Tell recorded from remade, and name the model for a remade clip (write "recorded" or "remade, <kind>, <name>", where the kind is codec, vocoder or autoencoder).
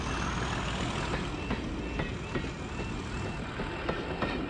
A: recorded